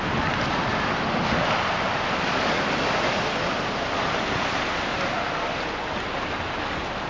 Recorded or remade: recorded